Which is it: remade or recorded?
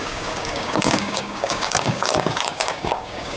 remade